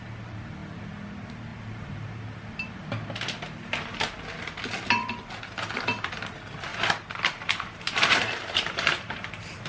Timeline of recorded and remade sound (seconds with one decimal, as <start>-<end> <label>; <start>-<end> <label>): 0.0-1.5 recorded; 1.5-2.2 remade; 2.2-6.7 recorded; 6.7-9.7 remade